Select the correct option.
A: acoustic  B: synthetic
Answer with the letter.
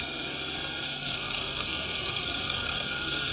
B